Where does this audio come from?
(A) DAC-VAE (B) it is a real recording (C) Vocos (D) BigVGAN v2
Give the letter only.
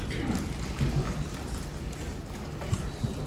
B